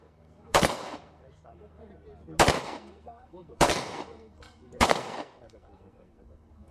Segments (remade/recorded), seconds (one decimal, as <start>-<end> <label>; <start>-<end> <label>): 0.0-1.9 remade; 1.9-2.6 recorded; 2.6-6.7 remade